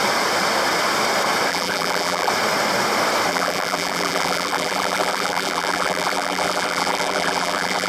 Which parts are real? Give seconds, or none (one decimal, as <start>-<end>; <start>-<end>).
0.0-1.5; 2.3-3.3